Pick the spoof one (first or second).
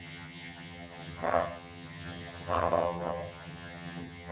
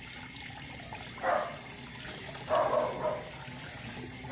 first